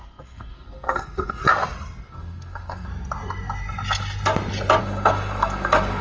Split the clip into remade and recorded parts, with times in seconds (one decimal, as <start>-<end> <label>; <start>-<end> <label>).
0.0-1.4 remade; 1.4-2.1 recorded; 2.1-2.9 remade; 2.9-4.8 recorded; 4.8-6.0 remade